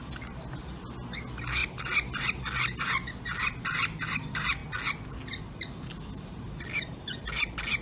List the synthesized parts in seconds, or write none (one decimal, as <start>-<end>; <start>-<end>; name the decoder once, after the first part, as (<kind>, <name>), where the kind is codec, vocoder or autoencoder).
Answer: none